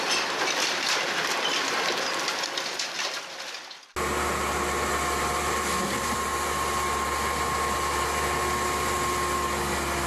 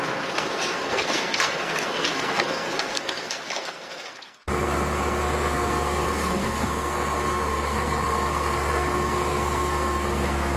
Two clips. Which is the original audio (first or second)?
first